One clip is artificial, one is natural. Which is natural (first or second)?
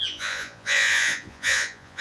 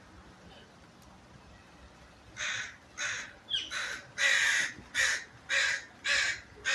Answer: second